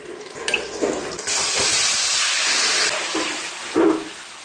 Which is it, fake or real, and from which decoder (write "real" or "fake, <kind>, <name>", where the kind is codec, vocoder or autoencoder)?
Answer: real